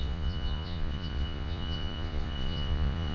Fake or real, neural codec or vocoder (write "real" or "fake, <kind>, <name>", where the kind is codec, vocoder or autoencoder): fake, vocoder, Vocos